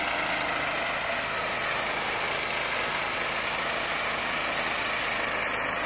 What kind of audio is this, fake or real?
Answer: real